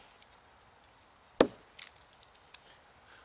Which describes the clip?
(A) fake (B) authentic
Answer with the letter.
B